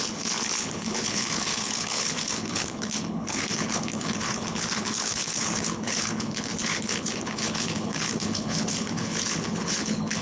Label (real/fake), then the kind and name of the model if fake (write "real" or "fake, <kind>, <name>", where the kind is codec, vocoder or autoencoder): fake, codec, HILCodec